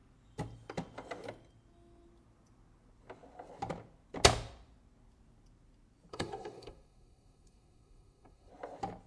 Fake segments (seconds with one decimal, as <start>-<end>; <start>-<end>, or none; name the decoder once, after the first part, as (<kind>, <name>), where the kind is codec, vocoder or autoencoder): 6.1-8.5 (codec, SNAC)